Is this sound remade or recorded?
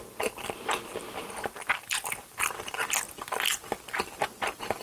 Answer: remade